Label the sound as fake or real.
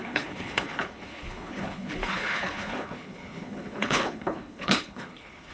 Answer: fake